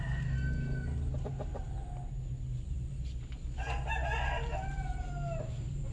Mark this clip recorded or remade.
recorded